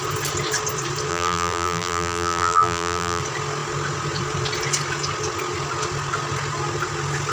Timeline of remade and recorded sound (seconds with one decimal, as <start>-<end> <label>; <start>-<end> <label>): 0.0-1.1 recorded; 1.1-3.2 remade; 3.2-7.3 recorded